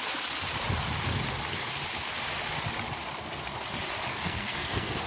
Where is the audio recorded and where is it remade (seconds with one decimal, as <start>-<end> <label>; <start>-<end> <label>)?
0.0-4.1 recorded; 4.1-5.1 remade